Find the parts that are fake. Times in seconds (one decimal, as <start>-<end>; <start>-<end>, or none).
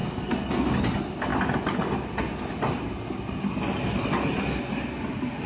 0.0-0.7